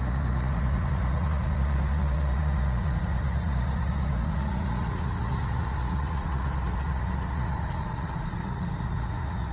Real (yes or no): no